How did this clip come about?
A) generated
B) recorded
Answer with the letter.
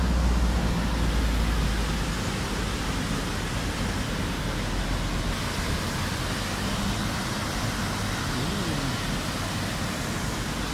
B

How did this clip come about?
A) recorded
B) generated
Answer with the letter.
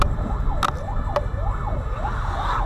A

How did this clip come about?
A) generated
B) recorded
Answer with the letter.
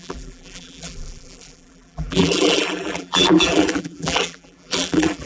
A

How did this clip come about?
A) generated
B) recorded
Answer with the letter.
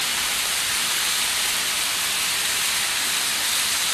B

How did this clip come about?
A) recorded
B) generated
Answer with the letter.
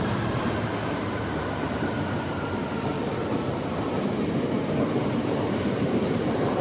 B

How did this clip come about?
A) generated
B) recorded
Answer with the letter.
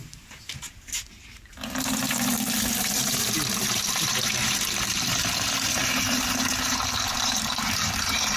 A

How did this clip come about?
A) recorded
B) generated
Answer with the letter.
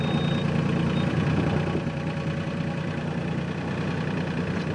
B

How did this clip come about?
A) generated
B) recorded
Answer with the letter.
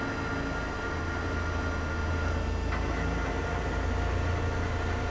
B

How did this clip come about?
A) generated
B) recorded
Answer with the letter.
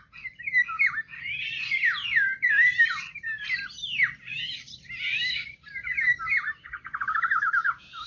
A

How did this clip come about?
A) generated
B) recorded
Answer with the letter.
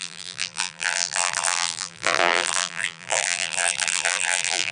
A